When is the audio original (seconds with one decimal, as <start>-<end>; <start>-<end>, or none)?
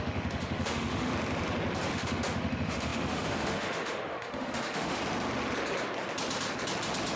1.1-1.9; 5.0-7.2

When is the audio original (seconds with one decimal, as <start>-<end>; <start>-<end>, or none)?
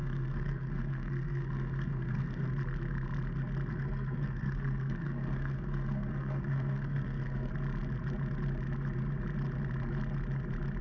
2.5-3.7; 7.5-10.8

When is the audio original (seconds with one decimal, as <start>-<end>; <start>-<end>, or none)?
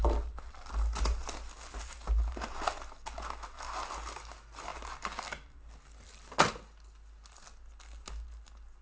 0.0-8.8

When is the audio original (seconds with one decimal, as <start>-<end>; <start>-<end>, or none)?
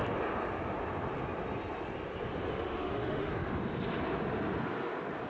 0.0-2.5; 3.3-5.3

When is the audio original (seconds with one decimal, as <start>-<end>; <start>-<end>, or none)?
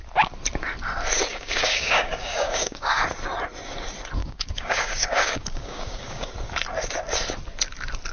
0.0-1.3; 3.0-4.2; 6.3-8.1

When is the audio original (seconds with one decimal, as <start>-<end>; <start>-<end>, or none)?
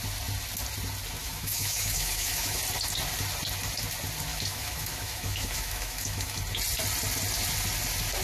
0.0-1.2; 2.6-4.3; 6.4-8.2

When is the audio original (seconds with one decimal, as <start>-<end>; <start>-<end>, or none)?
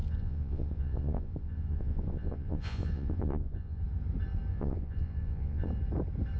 3.8-4.5; 5.7-6.4